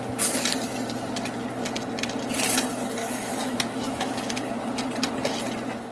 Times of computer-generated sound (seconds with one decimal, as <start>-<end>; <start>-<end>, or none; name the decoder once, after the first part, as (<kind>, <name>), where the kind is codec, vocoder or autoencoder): 3.0-4.5 (autoencoder, DAC-VAE)